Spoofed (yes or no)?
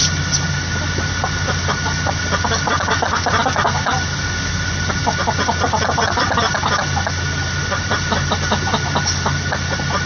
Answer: no